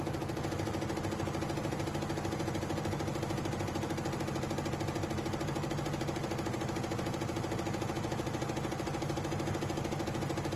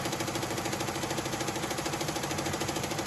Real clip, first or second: first